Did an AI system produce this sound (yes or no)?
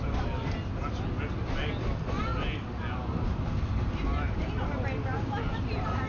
no